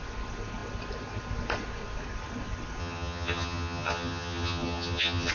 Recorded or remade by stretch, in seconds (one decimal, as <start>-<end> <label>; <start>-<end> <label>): 0.0-2.8 recorded; 2.8-5.3 remade